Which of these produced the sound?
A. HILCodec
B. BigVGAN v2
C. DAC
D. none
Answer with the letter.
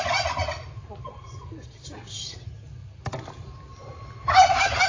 D